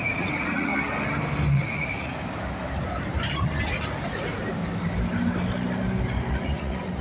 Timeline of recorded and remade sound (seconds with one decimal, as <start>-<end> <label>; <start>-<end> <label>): 0.0-0.7 remade; 0.7-1.5 recorded; 1.5-2.1 remade; 2.1-6.3 recorded; 6.3-7.0 remade